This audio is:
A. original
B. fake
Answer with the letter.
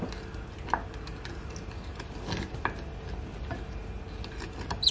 A